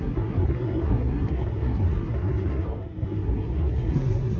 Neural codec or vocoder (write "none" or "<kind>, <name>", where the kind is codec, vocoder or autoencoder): codec, SNAC